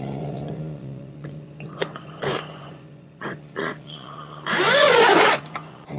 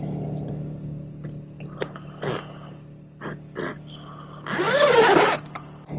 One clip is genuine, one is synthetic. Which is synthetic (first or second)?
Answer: first